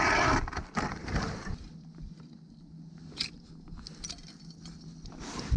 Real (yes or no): yes